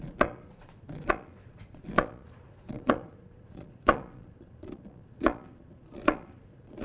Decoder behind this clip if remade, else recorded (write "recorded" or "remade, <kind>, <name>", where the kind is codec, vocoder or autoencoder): remade, vocoder, Vocos